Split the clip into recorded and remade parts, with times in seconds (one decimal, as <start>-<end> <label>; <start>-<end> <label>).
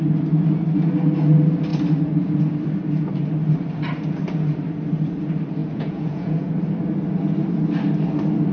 0.0-5.6 recorded; 5.6-6.6 remade; 6.6-8.5 recorded